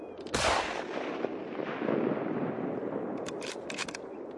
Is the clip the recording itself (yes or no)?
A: yes